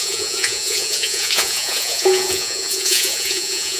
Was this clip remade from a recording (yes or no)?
yes